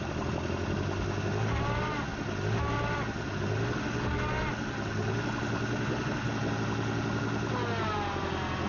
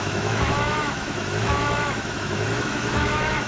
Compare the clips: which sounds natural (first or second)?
first